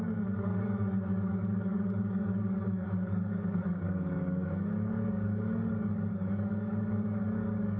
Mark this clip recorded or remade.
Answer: remade